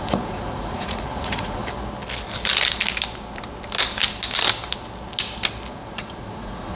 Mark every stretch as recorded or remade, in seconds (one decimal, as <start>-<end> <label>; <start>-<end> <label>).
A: 0.0-1.6 remade; 1.6-5.7 recorded; 5.7-6.8 remade